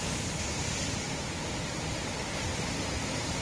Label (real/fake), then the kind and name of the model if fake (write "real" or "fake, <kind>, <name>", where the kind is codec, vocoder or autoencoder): real